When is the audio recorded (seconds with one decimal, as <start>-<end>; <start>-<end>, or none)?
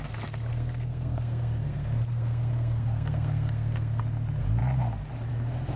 0.0-0.5; 4.0-5.8